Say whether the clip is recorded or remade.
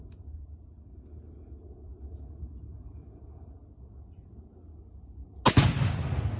recorded